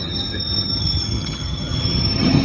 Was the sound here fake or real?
fake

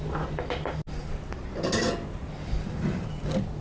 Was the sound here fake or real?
real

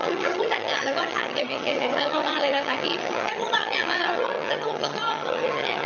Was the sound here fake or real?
fake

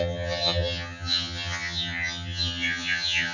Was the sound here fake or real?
fake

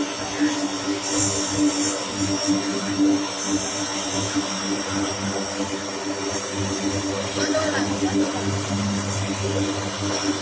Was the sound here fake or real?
real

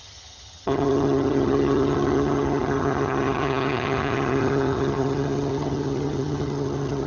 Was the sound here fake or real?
fake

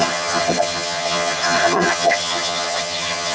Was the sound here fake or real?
fake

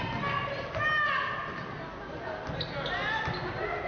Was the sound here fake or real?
real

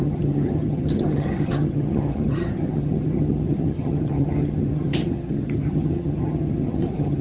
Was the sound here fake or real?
fake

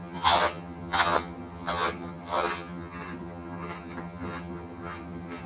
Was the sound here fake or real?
fake